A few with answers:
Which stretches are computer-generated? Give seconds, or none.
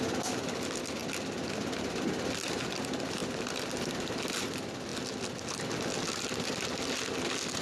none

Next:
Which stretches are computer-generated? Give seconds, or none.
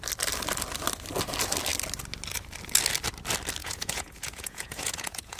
3.6-5.4 (vocoder, Vocos)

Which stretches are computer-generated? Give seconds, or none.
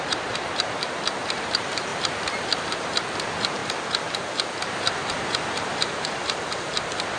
0.0-3.6 (vocoder, BigVGAN v2); 4.1-7.2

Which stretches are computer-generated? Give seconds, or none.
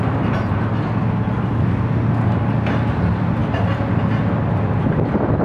none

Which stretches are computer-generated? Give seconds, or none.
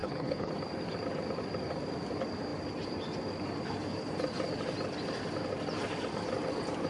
0.0-0.5 (codec, HILCodec)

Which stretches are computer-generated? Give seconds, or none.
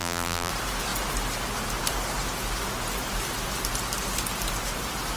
0.0-0.5 (vocoder, BigVGAN v2)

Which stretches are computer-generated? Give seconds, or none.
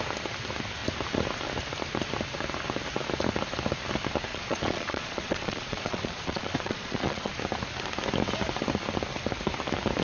4.3-7.3 (vocoder, Vocos)